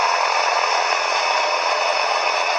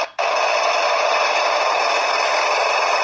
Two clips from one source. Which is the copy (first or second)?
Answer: first